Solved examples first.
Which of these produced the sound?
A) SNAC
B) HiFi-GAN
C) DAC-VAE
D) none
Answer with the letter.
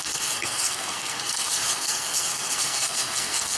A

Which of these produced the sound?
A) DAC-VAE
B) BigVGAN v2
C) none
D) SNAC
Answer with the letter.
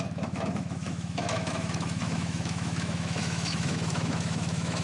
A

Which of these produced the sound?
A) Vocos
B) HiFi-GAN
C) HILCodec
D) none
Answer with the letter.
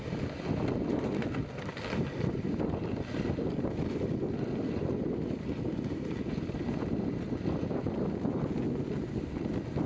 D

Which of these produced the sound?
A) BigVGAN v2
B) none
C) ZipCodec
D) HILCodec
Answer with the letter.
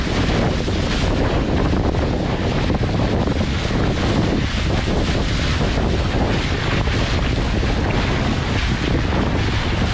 B